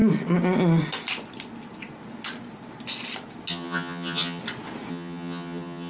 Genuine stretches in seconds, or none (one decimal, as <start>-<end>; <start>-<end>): 0.0-3.5; 4.4-4.9